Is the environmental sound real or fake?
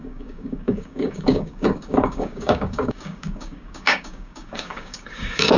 fake